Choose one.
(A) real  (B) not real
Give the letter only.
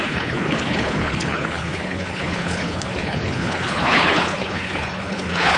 B